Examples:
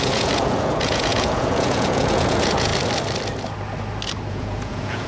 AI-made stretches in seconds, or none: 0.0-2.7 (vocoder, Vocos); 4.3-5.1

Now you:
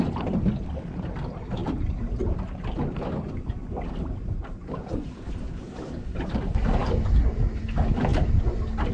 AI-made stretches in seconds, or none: 1.6-5.7 (vocoder, BigVGAN v2)

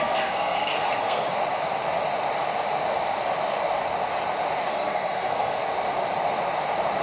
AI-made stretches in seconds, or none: 0.0-1.3 (codec, SNAC); 4.7-5.6

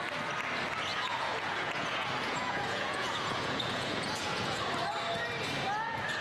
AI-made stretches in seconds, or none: 0.9-4.6 (vocoder, Vocos)

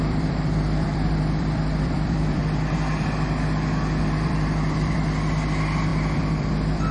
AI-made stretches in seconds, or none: 0.0-2.4 (vocoder, BigVGAN v2); 4.0-6.9